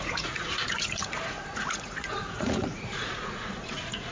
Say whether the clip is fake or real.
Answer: fake